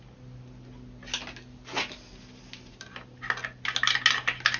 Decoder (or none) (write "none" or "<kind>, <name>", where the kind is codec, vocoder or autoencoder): none